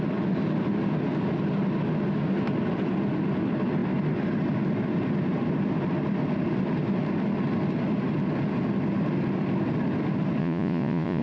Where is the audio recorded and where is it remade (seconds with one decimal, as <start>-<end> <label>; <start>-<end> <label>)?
0.0-10.4 recorded; 10.4-11.2 remade